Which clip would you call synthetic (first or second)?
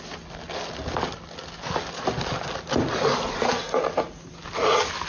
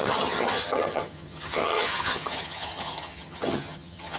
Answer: second